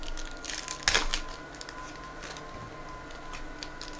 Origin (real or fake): real